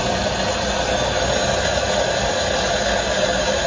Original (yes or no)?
yes